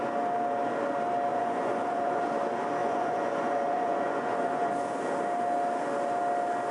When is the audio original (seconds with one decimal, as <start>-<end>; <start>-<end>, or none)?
0.0-1.3; 2.2-2.8; 4.7-6.7